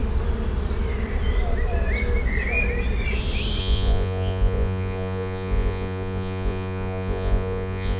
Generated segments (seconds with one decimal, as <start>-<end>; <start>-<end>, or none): 3.6-8.0

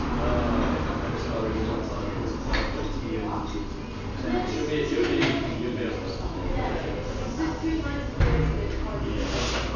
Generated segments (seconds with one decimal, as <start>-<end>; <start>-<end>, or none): none

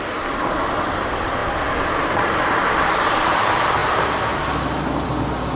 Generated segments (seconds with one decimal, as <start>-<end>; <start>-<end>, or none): none

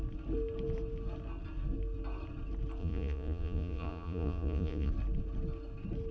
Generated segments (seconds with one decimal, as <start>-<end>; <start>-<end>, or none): 2.8-4.9